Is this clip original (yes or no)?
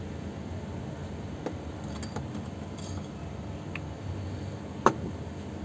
yes